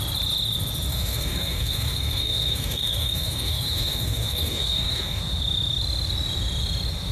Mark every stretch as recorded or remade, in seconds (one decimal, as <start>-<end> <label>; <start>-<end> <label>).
0.0-0.9 recorded; 0.9-5.2 remade; 5.2-7.1 recorded